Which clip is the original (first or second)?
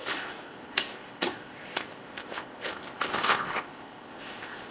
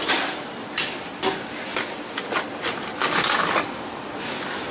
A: second